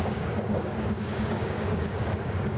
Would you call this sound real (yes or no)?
no